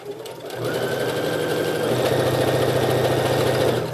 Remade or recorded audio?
recorded